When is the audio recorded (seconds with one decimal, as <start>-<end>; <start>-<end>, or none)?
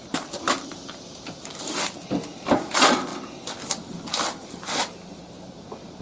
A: 3.1-4.4